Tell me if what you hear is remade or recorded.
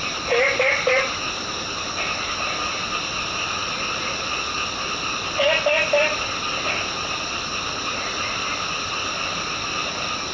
recorded